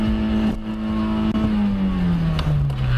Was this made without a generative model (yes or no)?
yes